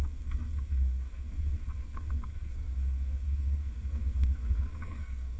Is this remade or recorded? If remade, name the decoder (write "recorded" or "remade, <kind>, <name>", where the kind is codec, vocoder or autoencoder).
remade, codec, SNAC